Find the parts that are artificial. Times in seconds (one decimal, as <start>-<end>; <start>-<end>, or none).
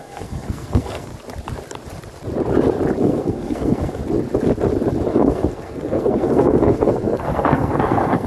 0.0-1.1; 3.0-4.0; 5.1-8.3